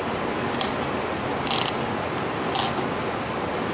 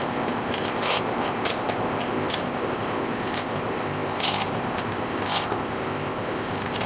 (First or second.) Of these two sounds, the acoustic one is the first